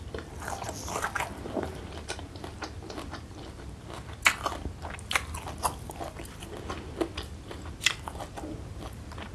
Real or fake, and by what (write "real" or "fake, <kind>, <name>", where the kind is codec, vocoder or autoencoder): real